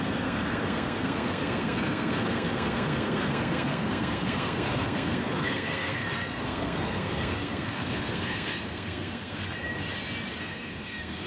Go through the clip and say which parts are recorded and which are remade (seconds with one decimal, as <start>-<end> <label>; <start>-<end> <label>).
0.0-9.4 remade; 9.4-10.4 recorded; 10.4-11.3 remade